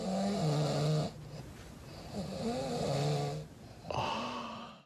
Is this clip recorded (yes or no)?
yes